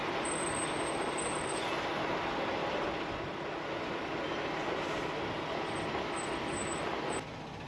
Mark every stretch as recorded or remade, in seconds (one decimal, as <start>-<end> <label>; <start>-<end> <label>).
0.0-7.7 recorded